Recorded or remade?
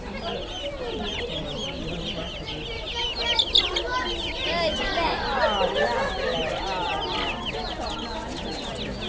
recorded